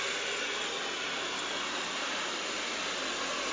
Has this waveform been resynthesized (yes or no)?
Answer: no